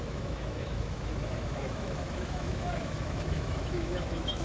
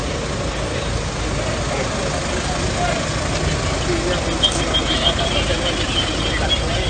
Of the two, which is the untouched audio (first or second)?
second